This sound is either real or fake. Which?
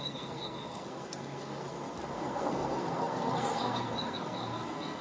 fake